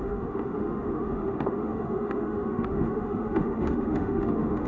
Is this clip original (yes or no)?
no